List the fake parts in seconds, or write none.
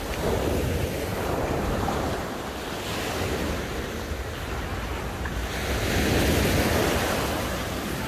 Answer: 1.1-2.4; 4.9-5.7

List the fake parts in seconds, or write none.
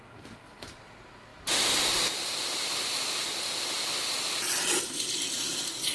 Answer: none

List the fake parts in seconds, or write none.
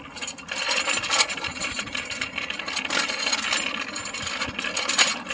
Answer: 1.5-2.1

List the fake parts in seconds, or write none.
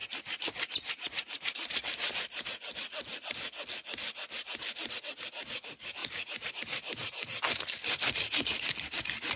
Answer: 0.0-4.9; 6.0-6.5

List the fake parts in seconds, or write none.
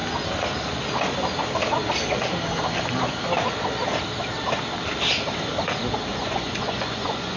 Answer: 6.1-7.4